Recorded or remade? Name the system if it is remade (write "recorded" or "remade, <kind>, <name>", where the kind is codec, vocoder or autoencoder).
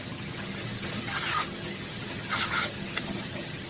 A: remade, vocoder, HiFi-GAN